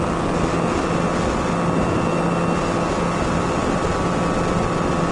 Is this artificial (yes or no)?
no